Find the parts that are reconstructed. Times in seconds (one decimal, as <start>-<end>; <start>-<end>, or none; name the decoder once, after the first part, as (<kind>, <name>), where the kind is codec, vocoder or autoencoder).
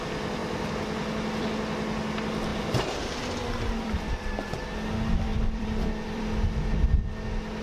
2.5-4.1 (vocoder, BigVGAN v2); 5.3-6.2